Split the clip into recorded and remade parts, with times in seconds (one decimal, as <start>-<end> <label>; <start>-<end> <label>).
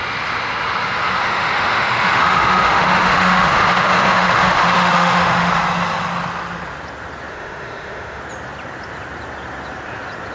0.0-1.2 recorded; 1.2-5.5 remade; 5.5-7.3 recorded; 7.3-8.2 remade; 8.2-10.3 recorded